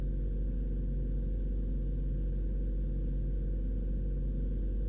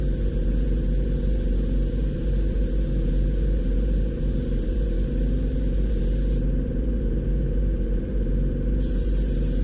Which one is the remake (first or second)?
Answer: second